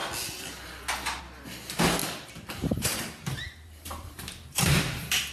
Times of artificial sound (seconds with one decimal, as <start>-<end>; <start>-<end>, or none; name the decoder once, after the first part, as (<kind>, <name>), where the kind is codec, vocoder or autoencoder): 2.0-5.3 (vocoder, BigVGAN v2)